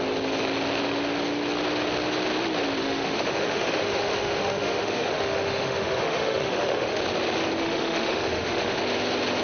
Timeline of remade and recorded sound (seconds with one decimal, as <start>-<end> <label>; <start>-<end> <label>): 0.0-2.8 recorded; 2.8-7.0 remade; 7.0-7.6 recorded; 7.6-8.8 remade; 8.8-9.4 recorded